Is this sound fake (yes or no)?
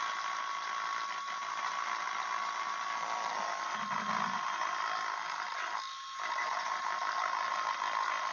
no